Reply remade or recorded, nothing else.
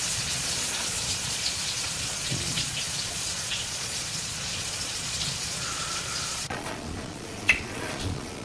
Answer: remade